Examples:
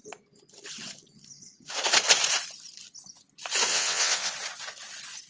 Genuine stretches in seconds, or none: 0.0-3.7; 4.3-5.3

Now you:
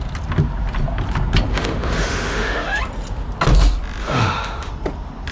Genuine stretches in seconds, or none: 0.0-1.5; 2.8-4.0; 4.7-5.3

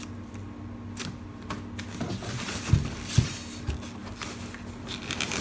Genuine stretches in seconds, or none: 0.0-5.4